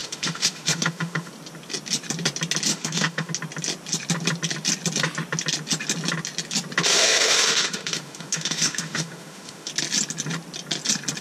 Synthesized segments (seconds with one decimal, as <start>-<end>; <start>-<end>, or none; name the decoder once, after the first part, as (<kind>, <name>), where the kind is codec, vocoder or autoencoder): 0.0-1.3 (autoencoder, DAC-VAE); 2.7-3.3; 6.9-9.7